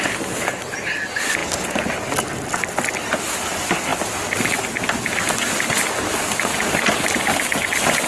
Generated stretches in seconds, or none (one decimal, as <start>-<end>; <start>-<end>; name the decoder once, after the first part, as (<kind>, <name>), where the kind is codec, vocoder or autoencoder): none